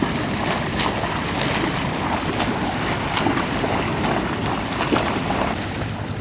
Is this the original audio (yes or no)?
yes